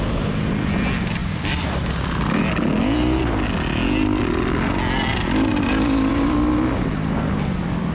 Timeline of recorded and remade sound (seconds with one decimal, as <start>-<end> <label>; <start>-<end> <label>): 0.0-1.2 recorded; 1.2-3.2 remade; 3.2-7.9 recorded